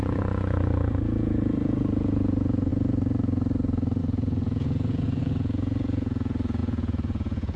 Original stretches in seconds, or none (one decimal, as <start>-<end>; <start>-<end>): 2.7-4.0

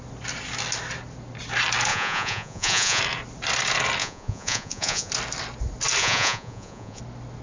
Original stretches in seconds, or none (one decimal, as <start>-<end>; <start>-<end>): 0.0-1.9; 3.0-4.0; 5.1-6.0; 7.0-7.4

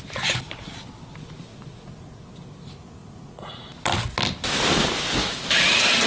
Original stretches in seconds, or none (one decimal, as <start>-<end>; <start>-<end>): 0.0-1.5; 2.2-3.0; 3.6-6.1

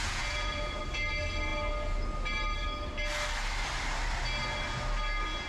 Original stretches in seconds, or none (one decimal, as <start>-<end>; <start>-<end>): 0.8-5.5